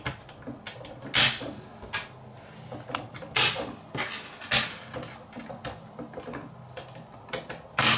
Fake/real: real